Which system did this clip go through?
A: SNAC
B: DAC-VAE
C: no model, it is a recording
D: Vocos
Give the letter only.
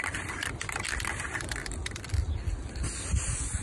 C